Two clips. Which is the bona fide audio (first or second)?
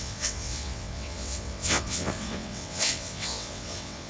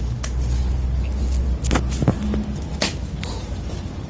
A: second